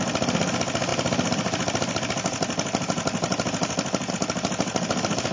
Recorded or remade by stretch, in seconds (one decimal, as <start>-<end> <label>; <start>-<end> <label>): 0.0-5.3 recorded